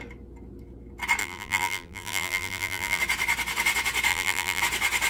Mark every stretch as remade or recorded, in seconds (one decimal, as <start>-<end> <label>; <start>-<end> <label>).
0.0-1.2 recorded; 1.2-3.0 remade; 3.0-4.1 recorded; 4.1-4.6 remade; 4.6-5.1 recorded